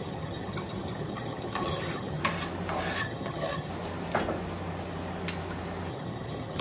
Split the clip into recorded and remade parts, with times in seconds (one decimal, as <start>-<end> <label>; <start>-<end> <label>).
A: 0.0-2.2 remade; 2.2-3.0 recorded; 3.0-3.7 remade; 3.7-5.9 recorded; 5.9-6.6 remade